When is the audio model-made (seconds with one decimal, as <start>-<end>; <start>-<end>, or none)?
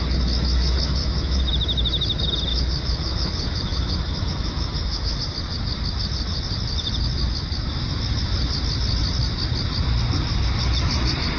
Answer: 1.0-1.5; 2.5-5.2